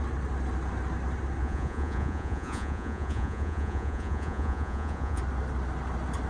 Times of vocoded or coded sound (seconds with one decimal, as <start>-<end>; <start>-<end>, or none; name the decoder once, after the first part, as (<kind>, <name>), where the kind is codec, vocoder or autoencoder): 1.4-5.2 (vocoder, Vocos)